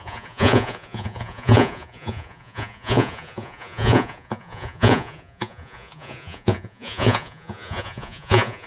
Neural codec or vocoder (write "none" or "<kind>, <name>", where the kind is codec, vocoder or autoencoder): vocoder, Vocos